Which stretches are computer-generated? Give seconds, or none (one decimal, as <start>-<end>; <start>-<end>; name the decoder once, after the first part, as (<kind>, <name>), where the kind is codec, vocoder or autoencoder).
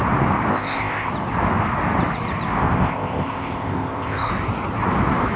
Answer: 0.5-1.1 (codec, ZipCodec); 2.6-4.3